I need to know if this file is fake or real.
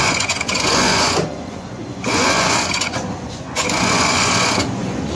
fake